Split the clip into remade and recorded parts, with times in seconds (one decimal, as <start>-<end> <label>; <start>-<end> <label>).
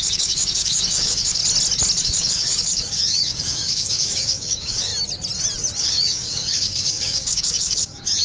0.0-1.4 remade; 1.4-2.0 recorded; 2.0-4.9 remade; 4.9-5.8 recorded; 5.8-8.2 remade